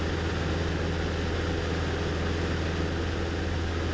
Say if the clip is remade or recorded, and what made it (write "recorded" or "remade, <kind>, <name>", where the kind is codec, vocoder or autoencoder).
recorded